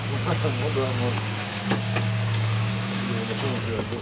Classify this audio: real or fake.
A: fake